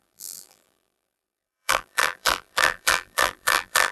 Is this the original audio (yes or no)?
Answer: no